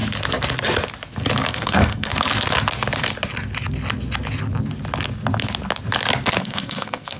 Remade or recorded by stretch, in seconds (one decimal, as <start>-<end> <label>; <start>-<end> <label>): 0.0-1.5 recorded; 1.5-2.1 remade; 2.1-6.4 recorded; 6.4-7.2 remade